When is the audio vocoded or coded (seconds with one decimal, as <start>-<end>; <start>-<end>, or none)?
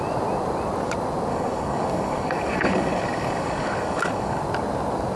1.3-4.4